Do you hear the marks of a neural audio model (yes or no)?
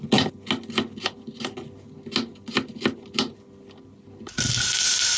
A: no